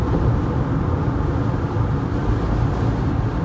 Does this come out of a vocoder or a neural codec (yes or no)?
no